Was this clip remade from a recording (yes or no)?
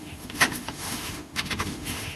yes